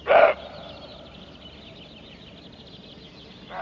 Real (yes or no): yes